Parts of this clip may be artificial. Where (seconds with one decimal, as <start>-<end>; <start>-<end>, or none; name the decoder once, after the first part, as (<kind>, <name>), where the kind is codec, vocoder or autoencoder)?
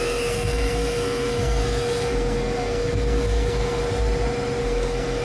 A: 0.0-3.8 (codec, SNAC); 4.6-5.2